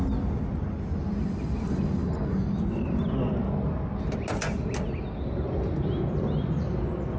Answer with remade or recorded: recorded